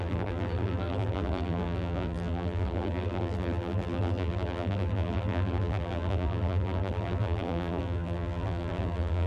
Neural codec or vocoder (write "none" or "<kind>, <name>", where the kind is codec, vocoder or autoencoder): vocoder, BigVGAN v2